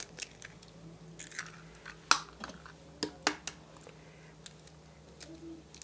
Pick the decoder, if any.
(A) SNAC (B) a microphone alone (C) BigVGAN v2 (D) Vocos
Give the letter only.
B